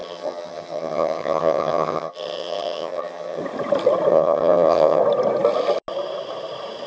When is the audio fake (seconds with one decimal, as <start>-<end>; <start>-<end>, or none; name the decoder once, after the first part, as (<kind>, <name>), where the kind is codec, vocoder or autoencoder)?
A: 0.0-3.4 (vocoder, HiFi-GAN); 4.1-5.0